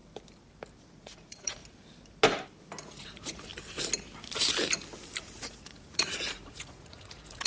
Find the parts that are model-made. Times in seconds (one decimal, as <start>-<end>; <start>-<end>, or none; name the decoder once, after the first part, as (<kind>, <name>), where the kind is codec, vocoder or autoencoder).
0.8-1.6 (vocoder, Vocos); 2.8-3.5; 5.2-7.5